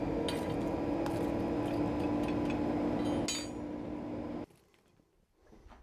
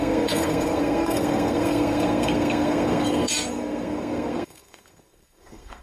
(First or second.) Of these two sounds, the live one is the first